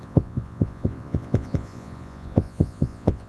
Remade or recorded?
remade